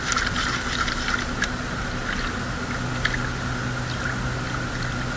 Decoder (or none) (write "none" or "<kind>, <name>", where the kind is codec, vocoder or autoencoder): none